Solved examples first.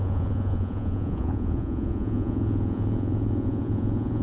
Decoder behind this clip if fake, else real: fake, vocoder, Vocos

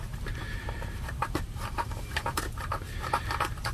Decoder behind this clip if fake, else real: fake, vocoder, BigVGAN v2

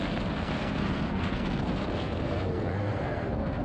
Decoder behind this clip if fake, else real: fake, codec, SNAC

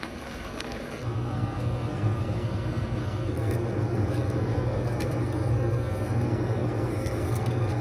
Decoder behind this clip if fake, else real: fake, codec, SNAC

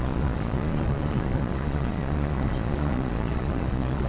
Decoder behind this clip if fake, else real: fake, vocoder, Vocos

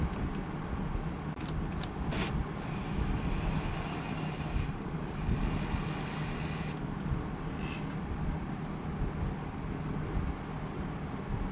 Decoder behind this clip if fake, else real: real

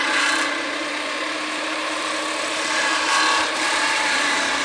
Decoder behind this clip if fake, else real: fake, vocoder, BigVGAN v2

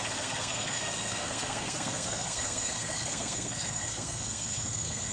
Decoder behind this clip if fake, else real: fake, codec, SNAC